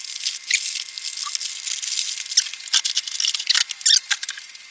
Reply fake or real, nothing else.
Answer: real